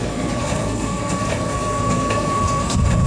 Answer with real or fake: fake